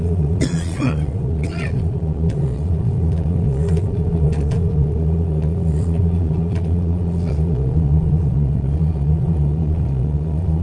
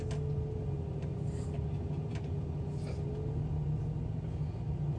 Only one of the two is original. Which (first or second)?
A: second